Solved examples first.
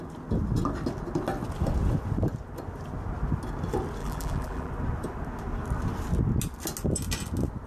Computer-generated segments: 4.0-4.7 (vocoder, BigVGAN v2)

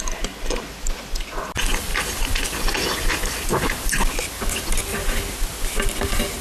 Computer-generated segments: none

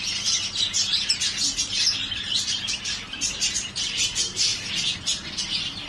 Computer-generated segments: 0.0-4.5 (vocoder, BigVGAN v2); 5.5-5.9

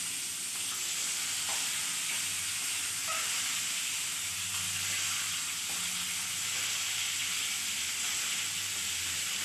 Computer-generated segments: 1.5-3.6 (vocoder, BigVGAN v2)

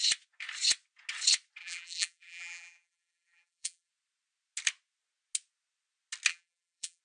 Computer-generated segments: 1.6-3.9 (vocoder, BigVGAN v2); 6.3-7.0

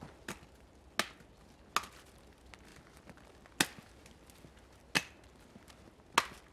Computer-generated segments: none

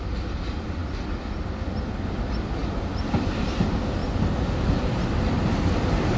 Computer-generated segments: none

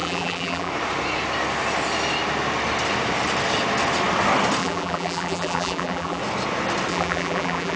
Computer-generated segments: 0.0-0.7 (vocoder, BigVGAN v2); 4.6-6.2; 6.9-7.8